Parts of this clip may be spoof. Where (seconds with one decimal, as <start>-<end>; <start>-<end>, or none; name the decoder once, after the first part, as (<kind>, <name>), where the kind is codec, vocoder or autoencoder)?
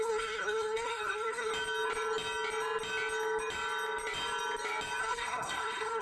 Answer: 0.0-1.5 (codec, SNAC); 5.0-6.0